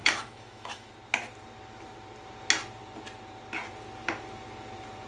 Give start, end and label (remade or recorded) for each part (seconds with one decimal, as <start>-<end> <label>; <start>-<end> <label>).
0.0-0.9 remade; 0.9-5.1 recorded